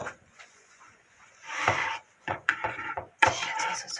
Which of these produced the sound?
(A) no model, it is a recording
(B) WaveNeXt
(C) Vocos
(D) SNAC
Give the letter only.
C